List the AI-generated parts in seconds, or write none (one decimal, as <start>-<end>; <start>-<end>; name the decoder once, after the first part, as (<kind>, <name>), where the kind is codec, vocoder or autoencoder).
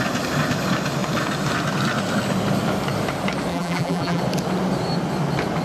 3.5-4.2 (vocoder, BigVGAN v2)